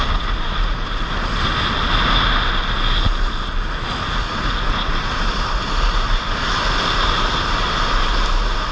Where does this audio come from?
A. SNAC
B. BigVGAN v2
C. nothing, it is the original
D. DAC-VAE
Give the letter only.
C